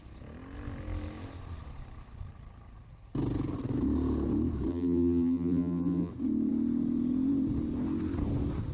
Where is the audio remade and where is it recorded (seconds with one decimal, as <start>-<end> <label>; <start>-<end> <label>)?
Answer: 0.0-4.7 recorded; 4.7-6.1 remade; 6.1-8.7 recorded